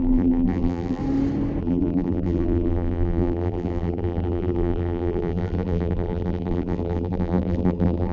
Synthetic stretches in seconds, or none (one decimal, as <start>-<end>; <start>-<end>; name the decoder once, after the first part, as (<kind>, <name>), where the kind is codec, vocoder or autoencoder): 0.0-1.0 (vocoder, BigVGAN v2); 1.6-8.1